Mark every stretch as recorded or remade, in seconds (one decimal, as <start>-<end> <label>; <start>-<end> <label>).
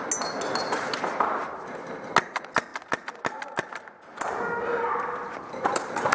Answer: 0.0-6.1 recorded